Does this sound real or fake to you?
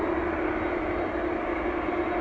real